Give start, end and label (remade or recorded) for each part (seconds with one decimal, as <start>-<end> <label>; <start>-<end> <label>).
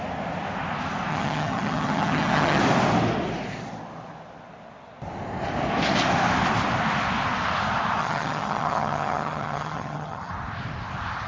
0.0-1.1 recorded; 1.1-2.6 remade; 2.6-8.0 recorded; 8.0-10.3 remade; 10.3-11.3 recorded